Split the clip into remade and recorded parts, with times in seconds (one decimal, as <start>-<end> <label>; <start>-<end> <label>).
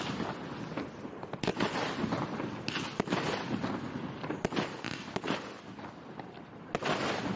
0.0-7.4 recorded